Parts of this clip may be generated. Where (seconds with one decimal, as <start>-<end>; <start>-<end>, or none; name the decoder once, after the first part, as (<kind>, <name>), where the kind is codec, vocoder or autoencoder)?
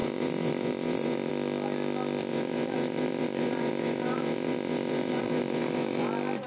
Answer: 0.0-1.3 (vocoder, Vocos); 2.2-6.1